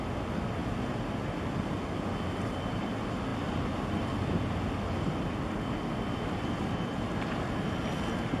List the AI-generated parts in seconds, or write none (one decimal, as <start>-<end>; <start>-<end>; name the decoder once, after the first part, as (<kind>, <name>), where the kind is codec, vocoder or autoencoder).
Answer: none